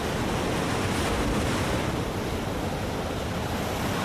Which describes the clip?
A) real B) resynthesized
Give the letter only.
A